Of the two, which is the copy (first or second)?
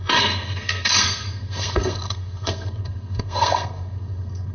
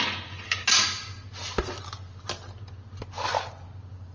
first